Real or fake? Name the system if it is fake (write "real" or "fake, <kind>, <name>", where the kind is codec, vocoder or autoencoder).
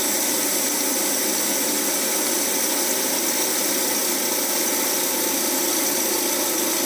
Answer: real